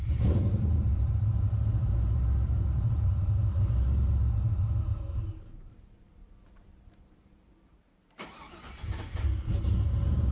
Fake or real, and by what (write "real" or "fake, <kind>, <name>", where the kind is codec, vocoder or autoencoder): fake, vocoder, BigVGAN v2